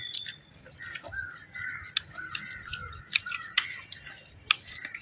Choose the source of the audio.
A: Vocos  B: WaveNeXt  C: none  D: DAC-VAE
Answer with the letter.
C